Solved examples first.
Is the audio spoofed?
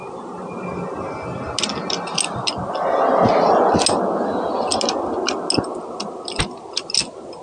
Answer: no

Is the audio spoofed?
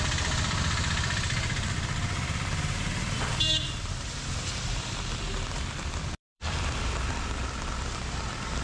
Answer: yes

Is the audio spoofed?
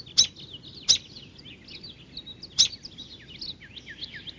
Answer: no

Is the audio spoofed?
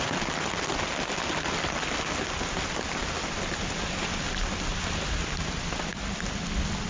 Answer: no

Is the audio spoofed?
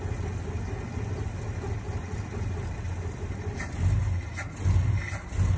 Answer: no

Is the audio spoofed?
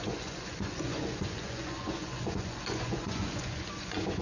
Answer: yes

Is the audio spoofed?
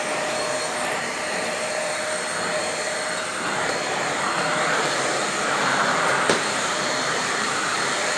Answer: yes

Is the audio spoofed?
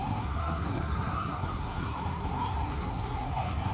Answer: yes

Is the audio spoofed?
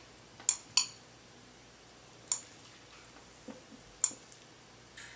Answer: no